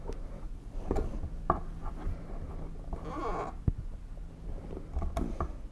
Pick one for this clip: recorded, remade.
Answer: recorded